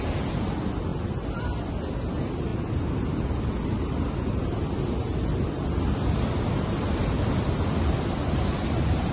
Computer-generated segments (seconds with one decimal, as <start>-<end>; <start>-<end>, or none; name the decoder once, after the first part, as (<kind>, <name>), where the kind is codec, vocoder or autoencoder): none